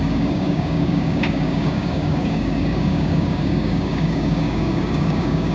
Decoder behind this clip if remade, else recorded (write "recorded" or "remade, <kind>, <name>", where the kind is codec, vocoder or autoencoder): remade, codec, DAC